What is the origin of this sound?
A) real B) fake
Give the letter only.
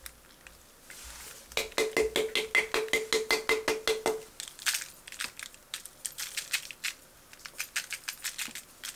A